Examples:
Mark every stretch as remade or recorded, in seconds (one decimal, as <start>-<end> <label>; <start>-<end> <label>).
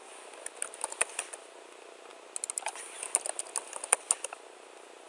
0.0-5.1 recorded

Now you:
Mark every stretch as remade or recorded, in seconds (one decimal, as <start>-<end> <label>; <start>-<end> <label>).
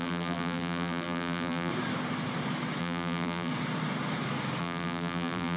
0.0-1.7 remade; 1.7-2.8 recorded; 2.8-3.5 remade; 3.5-4.6 recorded; 4.6-5.6 remade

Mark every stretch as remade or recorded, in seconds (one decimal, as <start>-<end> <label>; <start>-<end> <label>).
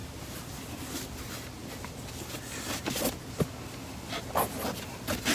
0.0-1.0 remade; 1.0-5.3 recorded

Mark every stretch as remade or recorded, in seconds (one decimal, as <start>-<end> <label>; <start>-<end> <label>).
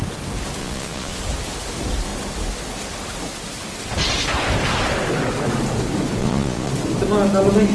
0.0-0.6 recorded; 0.6-1.2 remade; 1.2-6.2 recorded; 6.2-6.7 remade; 6.7-7.7 recorded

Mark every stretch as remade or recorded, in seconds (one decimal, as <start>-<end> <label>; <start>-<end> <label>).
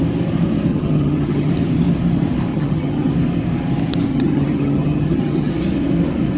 0.0-0.7 recorded; 0.7-1.5 remade; 1.5-2.5 recorded; 2.5-3.1 remade; 3.1-4.1 recorded; 4.1-5.5 remade; 5.5-6.4 recorded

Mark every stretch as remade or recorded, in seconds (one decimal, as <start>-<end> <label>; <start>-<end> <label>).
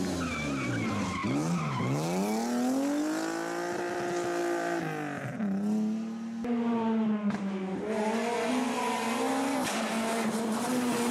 0.0-11.1 recorded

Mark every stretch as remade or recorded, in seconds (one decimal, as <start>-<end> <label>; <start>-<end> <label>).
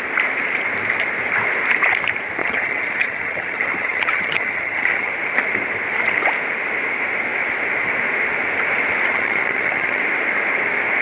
0.0-2.4 recorded; 2.4-5.1 remade; 5.1-9.1 recorded; 9.1-10.0 remade; 10.0-11.0 recorded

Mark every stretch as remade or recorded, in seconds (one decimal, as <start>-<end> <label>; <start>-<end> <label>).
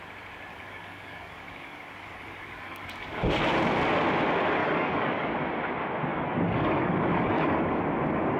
0.0-0.5 recorded; 0.5-3.4 remade; 3.4-4.6 recorded; 4.6-5.3 remade; 5.3-6.1 recorded; 6.1-7.8 remade; 7.8-8.4 recorded